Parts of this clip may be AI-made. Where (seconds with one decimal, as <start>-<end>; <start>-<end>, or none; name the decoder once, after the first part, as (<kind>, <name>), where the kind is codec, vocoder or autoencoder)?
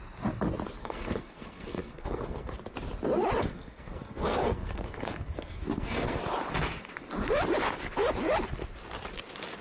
0.8-2.5 (codec, SNAC); 3.5-6.2